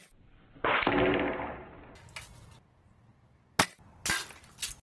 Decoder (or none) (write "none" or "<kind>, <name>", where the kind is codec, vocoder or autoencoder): none